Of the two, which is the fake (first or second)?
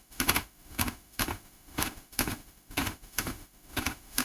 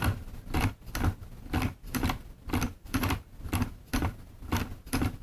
first